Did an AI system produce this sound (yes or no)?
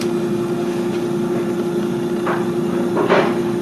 no